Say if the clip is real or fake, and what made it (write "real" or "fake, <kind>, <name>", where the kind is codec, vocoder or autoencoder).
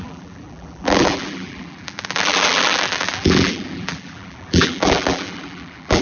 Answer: fake, vocoder, BigVGAN v2